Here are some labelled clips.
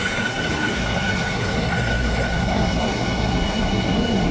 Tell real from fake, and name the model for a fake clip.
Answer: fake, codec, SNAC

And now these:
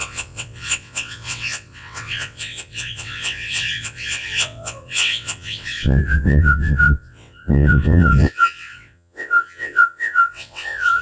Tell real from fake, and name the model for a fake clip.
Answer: fake, vocoder, WaveNeXt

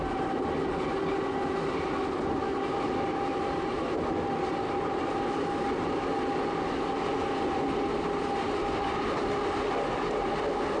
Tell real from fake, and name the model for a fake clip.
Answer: real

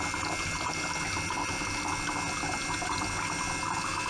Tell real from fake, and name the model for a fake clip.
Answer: real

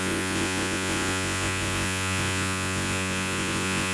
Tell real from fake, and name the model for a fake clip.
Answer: fake, vocoder, Vocos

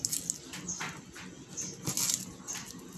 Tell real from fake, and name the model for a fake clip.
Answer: real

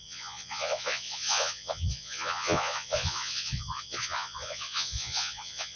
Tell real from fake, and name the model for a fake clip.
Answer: fake, vocoder, Vocos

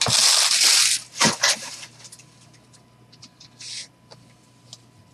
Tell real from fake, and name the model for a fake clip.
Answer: real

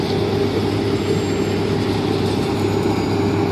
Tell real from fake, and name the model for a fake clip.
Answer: real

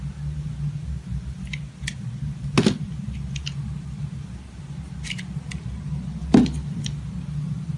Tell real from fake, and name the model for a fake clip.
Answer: real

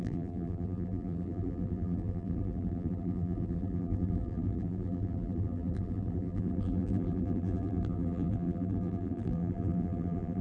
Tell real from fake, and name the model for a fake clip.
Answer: fake, vocoder, BigVGAN v2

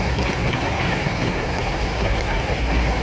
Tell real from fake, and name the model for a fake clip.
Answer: fake, codec, SNAC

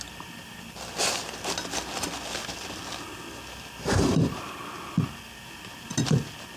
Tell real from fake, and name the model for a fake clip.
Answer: real